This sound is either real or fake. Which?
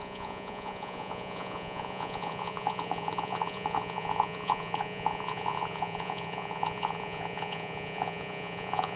fake